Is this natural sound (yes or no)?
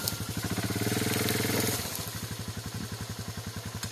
yes